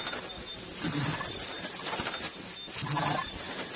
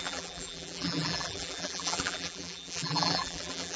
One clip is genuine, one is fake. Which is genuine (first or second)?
first